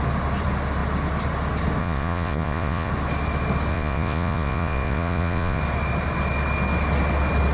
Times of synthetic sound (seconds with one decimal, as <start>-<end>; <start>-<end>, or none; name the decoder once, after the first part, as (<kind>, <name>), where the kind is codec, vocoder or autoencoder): 1.8-2.9 (vocoder, Vocos); 3.7-5.6

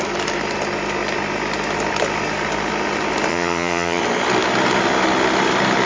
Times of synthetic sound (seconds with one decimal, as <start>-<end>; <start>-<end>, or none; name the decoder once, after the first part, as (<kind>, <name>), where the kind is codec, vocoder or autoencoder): 3.3-4.0 (vocoder, HiFi-GAN)

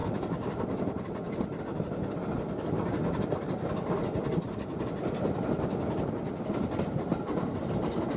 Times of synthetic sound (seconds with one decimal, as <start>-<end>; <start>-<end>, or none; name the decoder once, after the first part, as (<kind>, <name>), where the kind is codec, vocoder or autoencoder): none

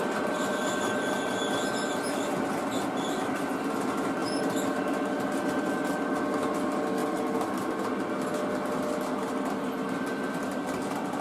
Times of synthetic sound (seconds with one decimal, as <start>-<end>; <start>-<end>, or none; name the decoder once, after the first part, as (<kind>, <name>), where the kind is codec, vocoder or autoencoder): none

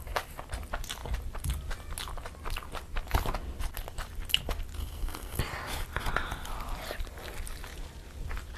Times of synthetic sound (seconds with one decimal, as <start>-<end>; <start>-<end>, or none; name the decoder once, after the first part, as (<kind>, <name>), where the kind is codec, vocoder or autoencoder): 4.8-5.4 (codec, SNAC)